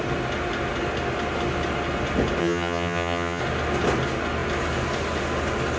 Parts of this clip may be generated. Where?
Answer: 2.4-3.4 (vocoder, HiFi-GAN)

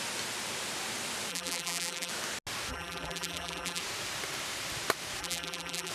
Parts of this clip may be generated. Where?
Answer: 1.3-2.1 (vocoder, BigVGAN v2); 2.7-3.8; 5.2-5.9